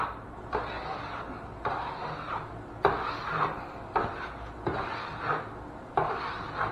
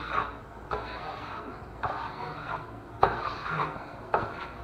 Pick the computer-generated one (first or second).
second